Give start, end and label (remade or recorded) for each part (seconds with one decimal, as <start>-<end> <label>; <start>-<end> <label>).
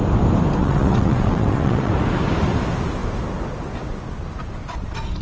0.0-0.6 recorded; 0.6-1.9 remade; 1.9-5.2 recorded